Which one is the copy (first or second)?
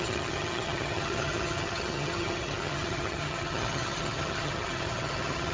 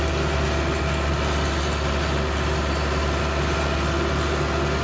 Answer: first